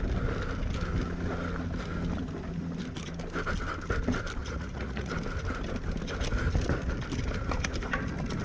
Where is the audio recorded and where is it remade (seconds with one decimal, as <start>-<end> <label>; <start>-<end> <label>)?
0.0-4.4 recorded; 4.4-5.1 remade; 5.1-8.4 recorded